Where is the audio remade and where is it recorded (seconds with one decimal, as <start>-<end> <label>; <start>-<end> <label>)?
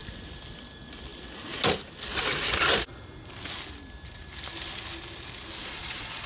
0.0-5.6 recorded; 5.6-6.3 remade